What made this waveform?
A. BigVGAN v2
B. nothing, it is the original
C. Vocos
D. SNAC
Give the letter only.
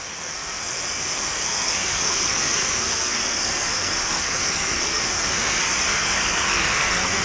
D